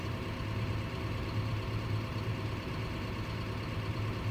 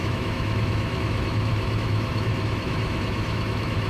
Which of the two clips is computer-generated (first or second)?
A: second